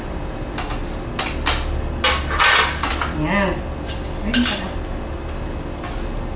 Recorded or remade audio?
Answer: recorded